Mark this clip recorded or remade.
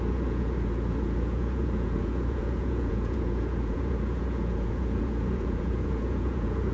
remade